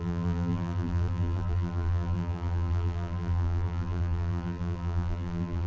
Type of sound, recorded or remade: remade